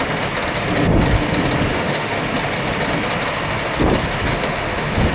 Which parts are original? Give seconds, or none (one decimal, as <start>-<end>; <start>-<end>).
0.0-1.7; 2.2-4.3